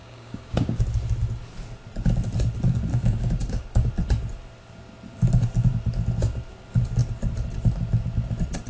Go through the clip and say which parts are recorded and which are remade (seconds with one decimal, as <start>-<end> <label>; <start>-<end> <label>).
0.0-0.8 remade; 0.8-2.9 recorded; 2.9-3.9 remade; 3.9-8.7 recorded